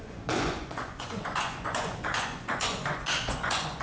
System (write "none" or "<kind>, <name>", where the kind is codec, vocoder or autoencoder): vocoder, Vocos